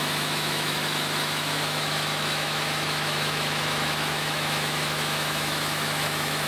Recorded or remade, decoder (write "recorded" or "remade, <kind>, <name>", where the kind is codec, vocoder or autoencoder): remade, autoencoder, DAC-VAE